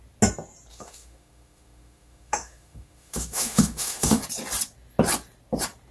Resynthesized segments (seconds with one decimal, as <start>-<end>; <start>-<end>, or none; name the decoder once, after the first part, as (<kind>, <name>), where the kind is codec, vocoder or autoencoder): 0.7-4.2 (autoencoder, DAC-VAE)